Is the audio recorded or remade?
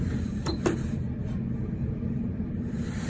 remade